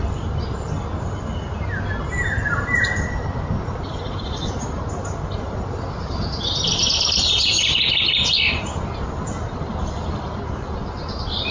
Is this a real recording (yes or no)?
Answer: yes